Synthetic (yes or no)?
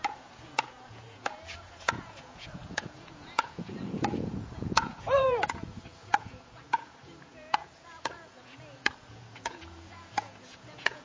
yes